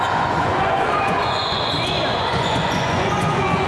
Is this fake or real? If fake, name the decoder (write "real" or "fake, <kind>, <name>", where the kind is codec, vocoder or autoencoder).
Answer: fake, vocoder, Vocos